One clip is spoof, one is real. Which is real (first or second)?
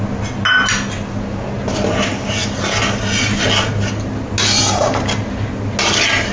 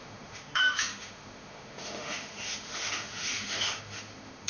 first